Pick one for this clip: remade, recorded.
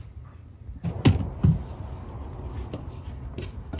recorded